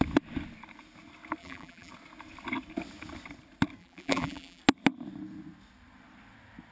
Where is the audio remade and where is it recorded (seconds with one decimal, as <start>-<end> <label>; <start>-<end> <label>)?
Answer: 0.0-1.4 recorded; 1.4-1.9 remade; 1.9-3.8 recorded; 3.8-4.6 remade; 4.6-6.7 recorded

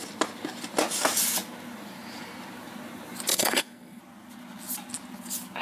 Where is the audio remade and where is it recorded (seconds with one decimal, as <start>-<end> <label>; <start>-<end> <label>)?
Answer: 0.0-3.3 recorded; 3.3-4.0 remade; 4.0-5.6 recorded

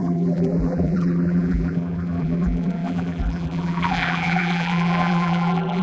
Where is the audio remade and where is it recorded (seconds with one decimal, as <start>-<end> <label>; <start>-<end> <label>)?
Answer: 0.0-5.8 remade

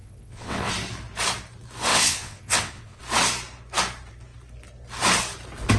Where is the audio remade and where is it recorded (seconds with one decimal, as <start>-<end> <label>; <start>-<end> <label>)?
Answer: 0.0-0.7 remade; 0.7-1.9 recorded; 1.9-3.0 remade; 3.0-5.8 recorded

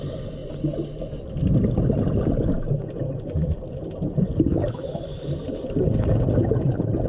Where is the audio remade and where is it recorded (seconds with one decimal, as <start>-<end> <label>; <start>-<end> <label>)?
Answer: 0.0-4.5 recorded; 4.5-5.4 remade; 5.4-7.1 recorded

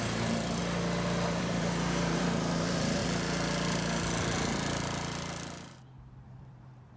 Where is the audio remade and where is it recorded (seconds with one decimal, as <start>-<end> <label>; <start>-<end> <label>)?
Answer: 0.0-0.6 remade; 0.6-1.4 recorded; 1.4-3.0 remade; 3.0-6.2 recorded; 6.2-7.0 remade

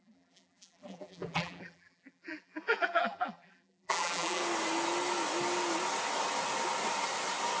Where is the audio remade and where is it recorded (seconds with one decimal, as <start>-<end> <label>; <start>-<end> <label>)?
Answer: 0.0-4.4 remade; 4.4-7.6 recorded

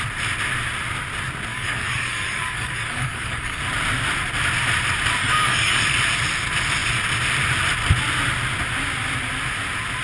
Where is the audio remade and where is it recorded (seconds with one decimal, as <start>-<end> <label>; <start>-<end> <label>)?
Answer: 0.0-1.5 recorded; 1.5-3.6 remade; 3.6-5.2 recorded; 5.2-5.8 remade; 5.8-10.0 recorded